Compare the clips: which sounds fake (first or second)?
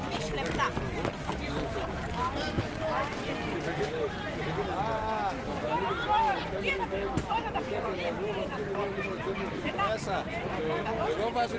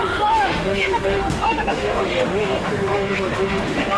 second